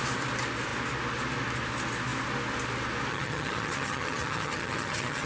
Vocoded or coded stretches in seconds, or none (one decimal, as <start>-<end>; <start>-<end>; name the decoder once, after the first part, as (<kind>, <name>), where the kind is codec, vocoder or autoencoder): 3.1-5.3 (vocoder, HiFi-GAN)